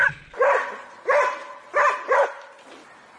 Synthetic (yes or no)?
no